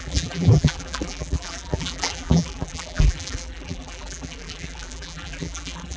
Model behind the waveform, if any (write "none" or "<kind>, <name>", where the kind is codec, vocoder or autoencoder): vocoder, BigVGAN v2